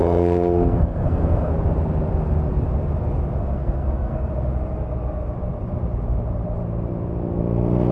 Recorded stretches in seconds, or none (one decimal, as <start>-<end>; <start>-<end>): 1.5-3.4; 4.3-7.9